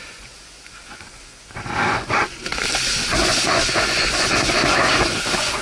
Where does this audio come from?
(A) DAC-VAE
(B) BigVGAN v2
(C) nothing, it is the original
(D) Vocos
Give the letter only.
D